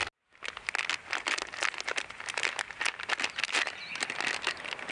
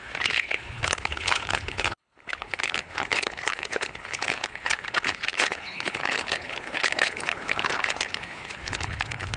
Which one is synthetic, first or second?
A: second